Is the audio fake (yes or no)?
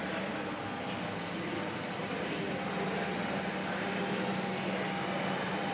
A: no